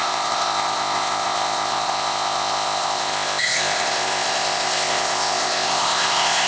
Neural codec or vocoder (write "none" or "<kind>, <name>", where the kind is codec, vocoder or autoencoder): codec, ZipCodec